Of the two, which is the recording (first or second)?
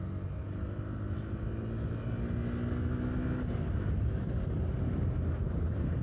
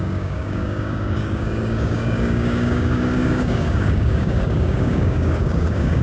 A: first